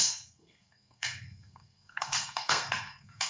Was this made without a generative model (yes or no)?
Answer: no